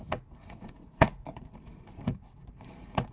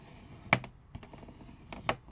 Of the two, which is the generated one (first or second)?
first